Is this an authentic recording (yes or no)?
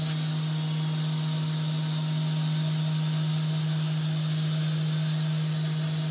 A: yes